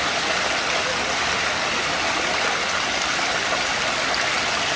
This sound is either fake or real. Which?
real